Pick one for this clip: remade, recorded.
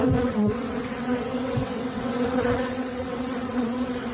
remade